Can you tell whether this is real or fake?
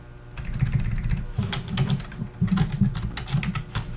real